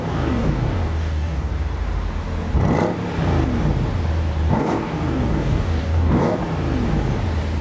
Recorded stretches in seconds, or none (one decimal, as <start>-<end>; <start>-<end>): 1.5-4.5; 6.4-7.6